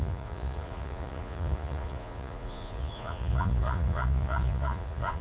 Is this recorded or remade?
remade